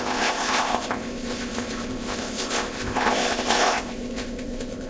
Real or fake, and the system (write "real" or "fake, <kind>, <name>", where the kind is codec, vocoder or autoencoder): fake, codec, ZipCodec